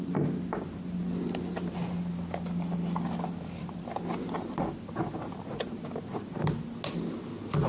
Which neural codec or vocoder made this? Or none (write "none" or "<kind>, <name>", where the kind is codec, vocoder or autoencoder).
none